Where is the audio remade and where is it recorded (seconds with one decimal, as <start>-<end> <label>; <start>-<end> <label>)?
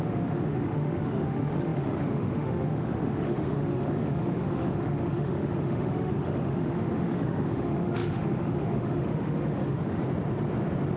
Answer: 0.0-10.0 remade; 10.0-11.0 recorded